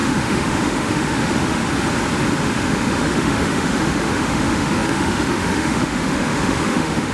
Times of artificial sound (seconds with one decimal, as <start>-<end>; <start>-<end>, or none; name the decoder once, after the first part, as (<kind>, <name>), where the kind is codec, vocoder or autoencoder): 0.0-1.6 (autoencoder, DAC-VAE); 2.4-7.1